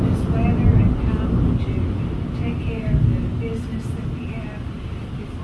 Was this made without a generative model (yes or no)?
yes